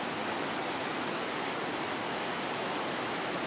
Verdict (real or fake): real